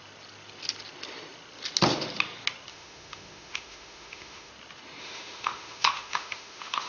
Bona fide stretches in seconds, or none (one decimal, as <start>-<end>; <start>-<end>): 0.0-2.7; 4.5-5.0